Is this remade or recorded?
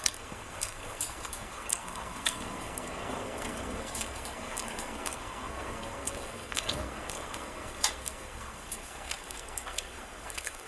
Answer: remade